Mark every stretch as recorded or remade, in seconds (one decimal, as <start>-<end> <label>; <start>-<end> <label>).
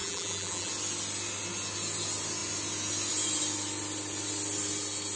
0.0-0.7 remade; 0.7-5.2 recorded